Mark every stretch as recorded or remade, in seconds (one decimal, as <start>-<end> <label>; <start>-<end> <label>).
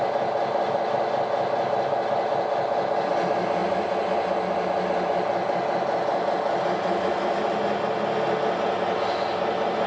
0.0-9.9 recorded